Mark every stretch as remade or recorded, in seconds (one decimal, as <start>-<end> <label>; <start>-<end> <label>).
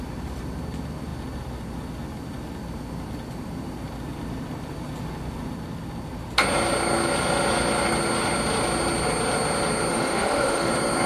0.0-9.9 recorded; 9.9-10.7 remade; 10.7-11.1 recorded